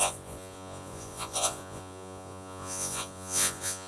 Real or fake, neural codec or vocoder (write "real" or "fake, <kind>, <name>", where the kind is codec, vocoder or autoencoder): fake, vocoder, Vocos